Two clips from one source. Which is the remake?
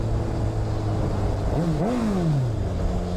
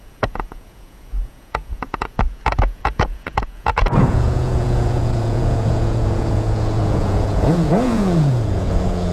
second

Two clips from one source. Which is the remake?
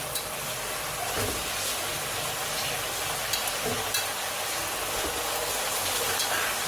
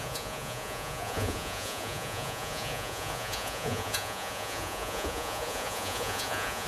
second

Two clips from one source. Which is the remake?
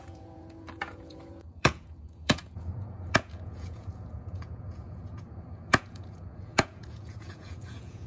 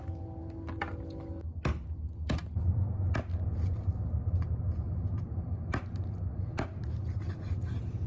first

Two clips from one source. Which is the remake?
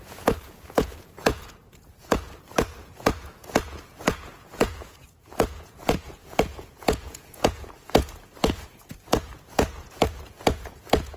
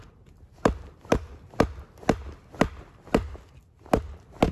first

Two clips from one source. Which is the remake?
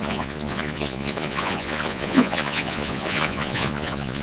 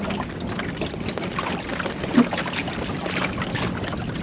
first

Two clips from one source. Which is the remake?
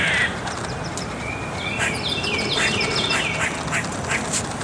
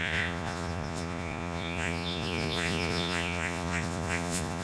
second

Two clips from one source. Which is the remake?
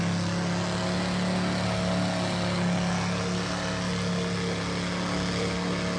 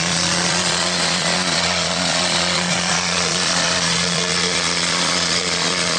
second